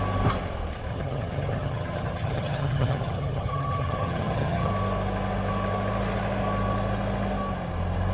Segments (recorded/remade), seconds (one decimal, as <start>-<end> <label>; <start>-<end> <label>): 0.0-0.9 recorded; 0.9-4.7 remade; 4.7-8.1 recorded